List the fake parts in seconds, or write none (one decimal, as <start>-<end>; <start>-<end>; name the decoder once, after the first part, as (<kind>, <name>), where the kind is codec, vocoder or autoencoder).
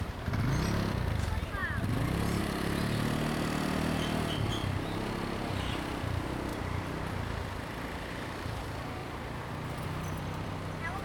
1.6-2.4 (vocoder, BigVGAN v2); 9.0-10.5